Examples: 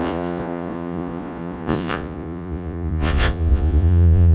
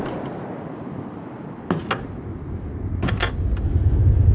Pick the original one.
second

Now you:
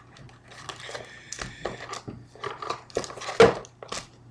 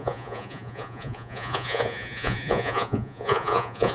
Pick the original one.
first